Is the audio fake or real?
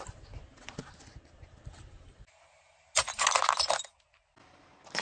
real